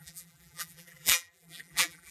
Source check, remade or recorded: remade